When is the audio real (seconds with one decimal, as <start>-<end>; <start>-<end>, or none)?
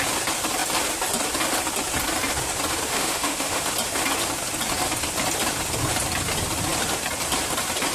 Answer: 0.0-2.9; 3.7-7.9